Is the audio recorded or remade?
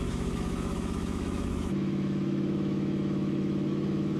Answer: remade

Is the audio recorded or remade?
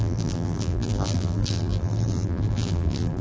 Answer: remade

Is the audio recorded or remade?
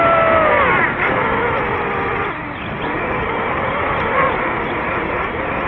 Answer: recorded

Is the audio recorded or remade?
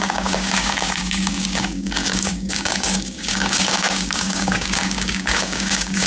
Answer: remade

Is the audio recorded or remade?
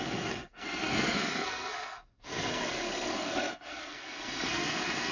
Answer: remade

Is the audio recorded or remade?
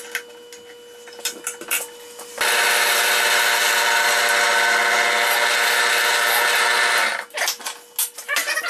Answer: recorded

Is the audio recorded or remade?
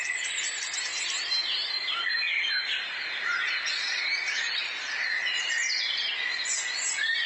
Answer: recorded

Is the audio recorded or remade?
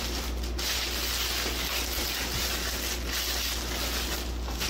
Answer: recorded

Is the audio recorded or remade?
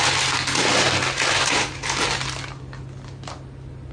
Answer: recorded